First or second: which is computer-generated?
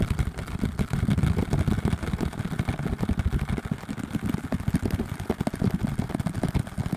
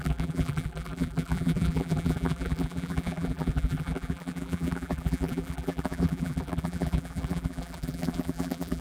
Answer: second